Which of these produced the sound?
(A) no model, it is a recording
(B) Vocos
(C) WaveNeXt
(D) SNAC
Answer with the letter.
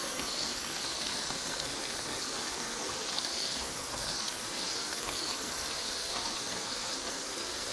D